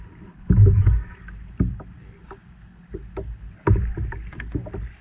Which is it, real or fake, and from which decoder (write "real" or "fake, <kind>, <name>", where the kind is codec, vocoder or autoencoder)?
real